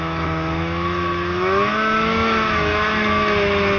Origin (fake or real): fake